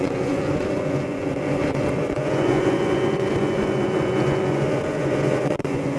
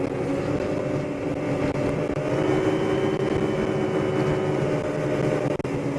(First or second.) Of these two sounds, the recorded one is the second